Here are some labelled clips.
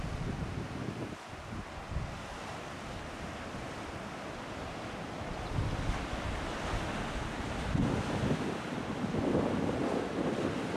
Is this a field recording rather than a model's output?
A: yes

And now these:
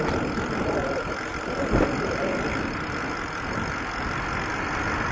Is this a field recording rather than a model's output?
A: yes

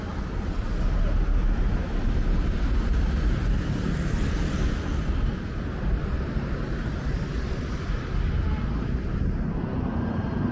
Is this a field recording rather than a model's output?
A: yes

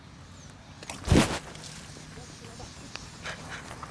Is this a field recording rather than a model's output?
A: yes